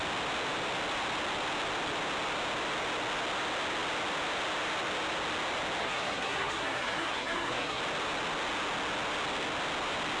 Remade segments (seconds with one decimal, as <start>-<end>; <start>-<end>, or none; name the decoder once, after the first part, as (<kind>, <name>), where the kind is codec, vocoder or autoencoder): 5.8-7.8 (codec, SNAC)